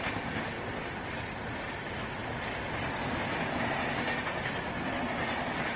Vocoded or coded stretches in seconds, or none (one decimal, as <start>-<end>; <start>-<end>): none